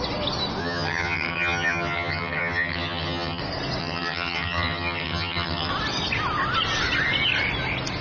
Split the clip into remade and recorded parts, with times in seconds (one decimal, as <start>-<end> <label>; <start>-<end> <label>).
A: 0.0-0.6 recorded; 0.6-3.4 remade; 3.4-3.8 recorded; 3.8-5.7 remade; 5.7-8.0 recorded